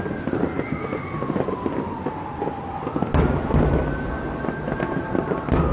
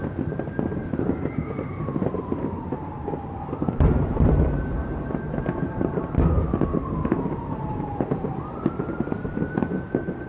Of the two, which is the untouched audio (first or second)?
first